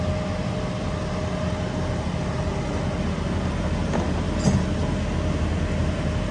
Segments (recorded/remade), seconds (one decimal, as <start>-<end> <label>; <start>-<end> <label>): 0.0-6.3 recorded